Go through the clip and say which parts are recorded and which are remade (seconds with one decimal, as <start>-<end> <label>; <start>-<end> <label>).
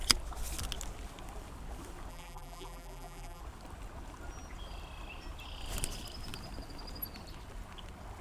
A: 0.0-2.1 recorded; 2.1-3.4 remade; 3.4-8.2 recorded